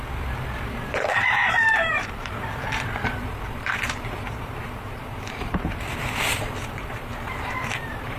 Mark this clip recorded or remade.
remade